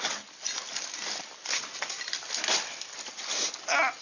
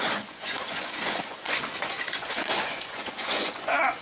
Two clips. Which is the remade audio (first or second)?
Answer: second